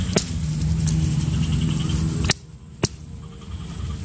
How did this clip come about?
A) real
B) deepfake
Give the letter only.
A